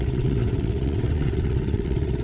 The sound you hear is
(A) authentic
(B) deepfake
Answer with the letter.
B